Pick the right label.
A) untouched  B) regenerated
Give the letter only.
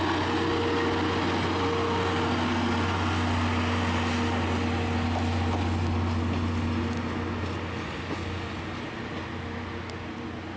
A